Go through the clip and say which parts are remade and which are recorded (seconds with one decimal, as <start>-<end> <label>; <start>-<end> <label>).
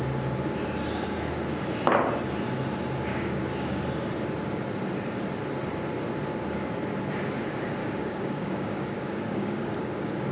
0.0-3.1 recorded; 3.1-3.8 remade; 3.8-7.8 recorded; 7.8-10.3 remade